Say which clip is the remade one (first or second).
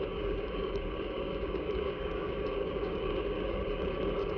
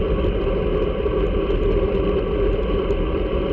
first